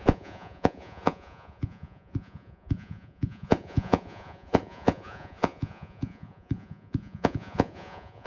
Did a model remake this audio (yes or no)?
yes